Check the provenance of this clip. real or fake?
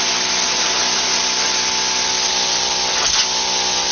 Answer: real